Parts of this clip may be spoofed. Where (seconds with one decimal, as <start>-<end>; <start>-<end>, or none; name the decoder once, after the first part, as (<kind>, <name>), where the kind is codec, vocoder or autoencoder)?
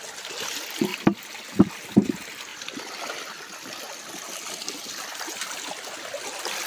2.5-5.7 (vocoder, BigVGAN v2)